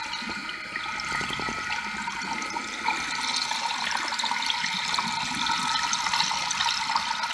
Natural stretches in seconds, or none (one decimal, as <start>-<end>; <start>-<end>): 0.0-7.3